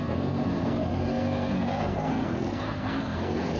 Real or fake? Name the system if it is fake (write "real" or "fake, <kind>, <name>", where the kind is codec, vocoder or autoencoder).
fake, codec, SNAC